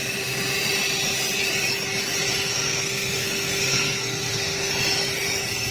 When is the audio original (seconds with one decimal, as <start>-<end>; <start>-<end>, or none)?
0.0-2.5; 4.7-5.7